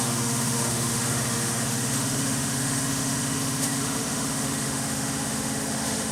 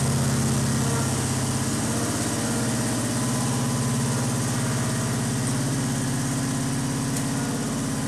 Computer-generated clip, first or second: first